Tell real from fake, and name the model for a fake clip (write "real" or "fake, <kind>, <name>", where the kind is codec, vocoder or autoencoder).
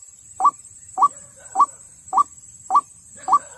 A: fake, vocoder, BigVGAN v2